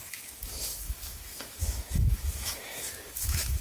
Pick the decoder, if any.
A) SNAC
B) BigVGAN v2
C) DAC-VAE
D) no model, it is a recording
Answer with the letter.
C